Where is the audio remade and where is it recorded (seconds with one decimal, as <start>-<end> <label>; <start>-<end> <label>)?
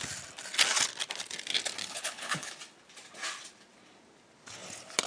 0.0-1.8 recorded; 1.8-2.5 remade; 2.5-5.1 recorded